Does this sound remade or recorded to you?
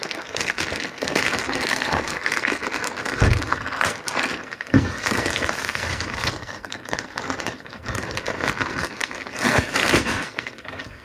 remade